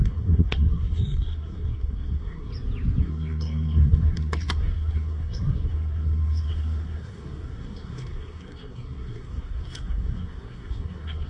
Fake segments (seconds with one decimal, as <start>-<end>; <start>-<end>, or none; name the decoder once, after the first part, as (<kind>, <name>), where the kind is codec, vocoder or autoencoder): 0.0-2.5 (codec, SNAC); 3.0-11.3

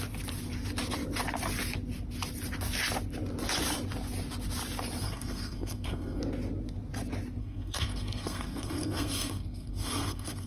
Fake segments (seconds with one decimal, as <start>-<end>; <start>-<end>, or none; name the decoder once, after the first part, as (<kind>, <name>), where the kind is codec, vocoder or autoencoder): 5.0-6.2 (codec, SNAC); 7.4-10.5

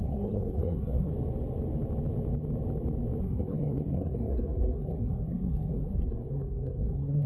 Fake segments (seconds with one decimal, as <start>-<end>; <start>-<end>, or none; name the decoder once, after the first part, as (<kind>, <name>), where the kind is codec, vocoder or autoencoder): 0.0-1.1 (codec, SNAC); 3.2-7.3

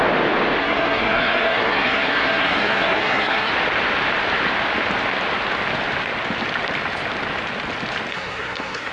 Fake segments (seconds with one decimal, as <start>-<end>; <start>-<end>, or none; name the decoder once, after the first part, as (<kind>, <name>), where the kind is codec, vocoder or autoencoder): 0.6-3.5 (codec, SNAC); 8.1-8.9